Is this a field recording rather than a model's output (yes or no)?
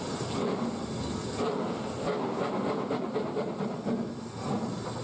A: yes